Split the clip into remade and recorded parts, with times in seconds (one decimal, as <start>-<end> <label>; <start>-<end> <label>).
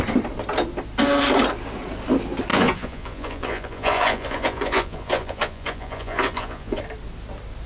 0.0-2.5 recorded; 2.5-6.8 remade; 6.8-7.7 recorded